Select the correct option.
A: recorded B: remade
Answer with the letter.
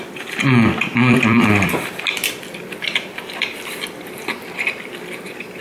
B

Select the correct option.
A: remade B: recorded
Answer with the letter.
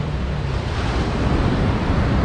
A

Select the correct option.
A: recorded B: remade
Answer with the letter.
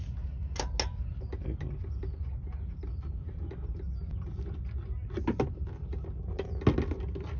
A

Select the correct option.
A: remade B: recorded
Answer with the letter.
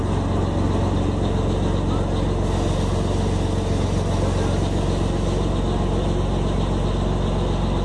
B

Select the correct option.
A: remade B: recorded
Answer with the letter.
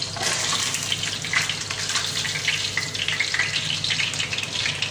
B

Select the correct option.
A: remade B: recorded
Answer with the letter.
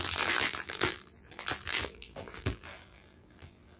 A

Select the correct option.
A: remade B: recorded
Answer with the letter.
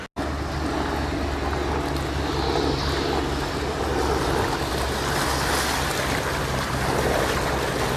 B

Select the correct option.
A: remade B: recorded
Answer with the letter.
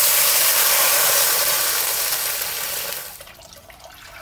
A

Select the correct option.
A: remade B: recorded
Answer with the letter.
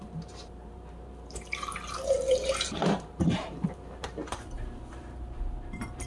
A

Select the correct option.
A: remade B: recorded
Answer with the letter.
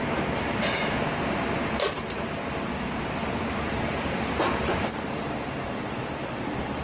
A